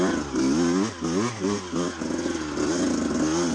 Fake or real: real